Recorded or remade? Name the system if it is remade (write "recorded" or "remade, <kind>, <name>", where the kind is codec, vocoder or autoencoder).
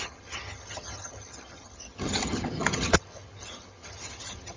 remade, vocoder, HiFi-GAN